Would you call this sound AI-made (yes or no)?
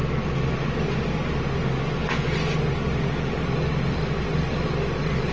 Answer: no